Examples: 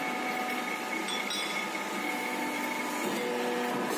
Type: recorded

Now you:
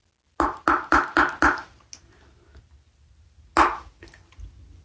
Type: recorded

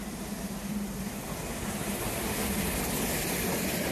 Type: recorded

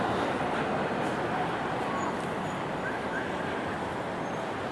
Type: recorded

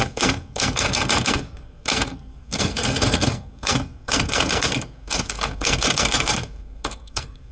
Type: remade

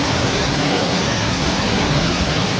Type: remade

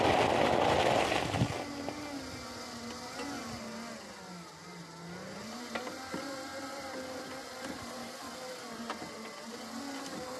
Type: recorded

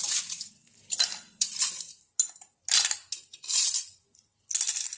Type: recorded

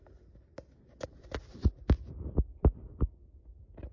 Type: recorded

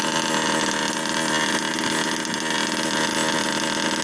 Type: recorded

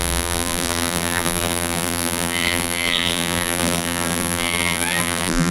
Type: remade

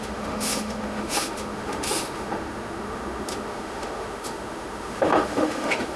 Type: remade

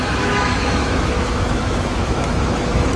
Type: remade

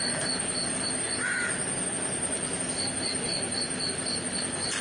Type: recorded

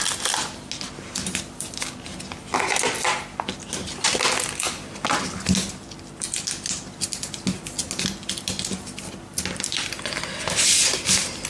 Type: recorded